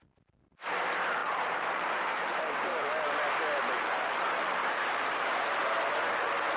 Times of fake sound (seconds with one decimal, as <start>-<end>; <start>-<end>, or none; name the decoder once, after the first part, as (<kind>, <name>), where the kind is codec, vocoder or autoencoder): 1.2-2.8 (vocoder, BigVGAN v2); 4.6-5.2